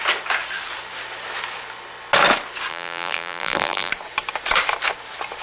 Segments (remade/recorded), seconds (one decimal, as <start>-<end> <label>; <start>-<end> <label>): 0.0-2.7 recorded; 2.7-3.9 remade; 3.9-5.4 recorded